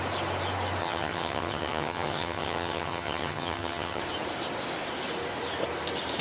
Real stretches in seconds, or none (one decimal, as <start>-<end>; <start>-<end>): 0.0-0.8; 4.0-6.2